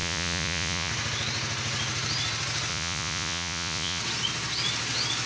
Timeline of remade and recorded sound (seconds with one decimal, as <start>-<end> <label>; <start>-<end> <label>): 0.0-0.9 remade; 0.9-2.7 recorded; 2.7-4.0 remade; 4.0-5.3 recorded